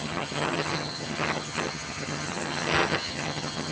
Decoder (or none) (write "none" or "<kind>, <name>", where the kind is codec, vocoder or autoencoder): vocoder, HiFi-GAN